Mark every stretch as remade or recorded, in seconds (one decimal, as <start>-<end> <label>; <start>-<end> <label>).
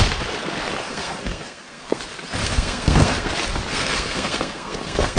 0.0-0.8 recorded; 0.8-2.0 remade; 2.0-2.4 recorded; 2.4-3.3 remade; 3.3-3.7 recorded; 3.7-5.2 remade